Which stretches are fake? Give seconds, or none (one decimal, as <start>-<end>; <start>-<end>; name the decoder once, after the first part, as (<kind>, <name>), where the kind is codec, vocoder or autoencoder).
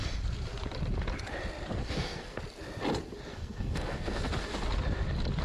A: 1.8-2.4 (codec, SNAC); 3.3-4.3